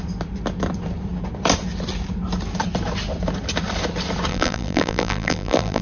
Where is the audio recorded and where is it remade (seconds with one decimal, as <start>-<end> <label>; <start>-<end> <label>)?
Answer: 0.0-4.3 recorded; 4.3-5.8 remade